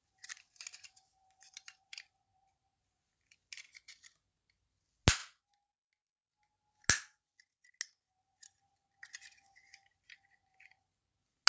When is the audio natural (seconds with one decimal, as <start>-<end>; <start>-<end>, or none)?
0.0-1.2; 2.5-11.5